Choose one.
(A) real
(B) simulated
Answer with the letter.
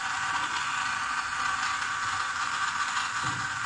B